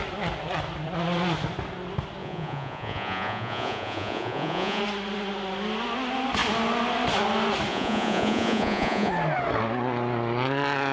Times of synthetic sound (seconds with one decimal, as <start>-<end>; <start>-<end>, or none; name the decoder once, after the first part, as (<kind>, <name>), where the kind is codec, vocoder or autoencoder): 2.2-4.8 (vocoder, Vocos); 7.7-9.1